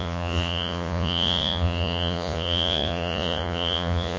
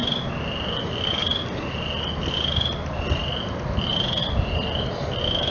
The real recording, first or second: second